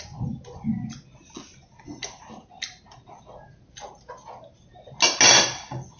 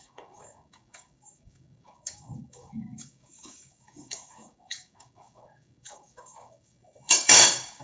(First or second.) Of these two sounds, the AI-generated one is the second